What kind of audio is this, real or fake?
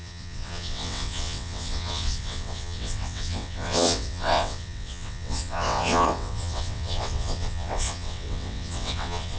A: fake